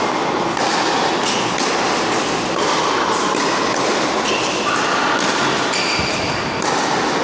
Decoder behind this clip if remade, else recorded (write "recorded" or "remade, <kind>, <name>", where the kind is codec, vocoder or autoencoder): recorded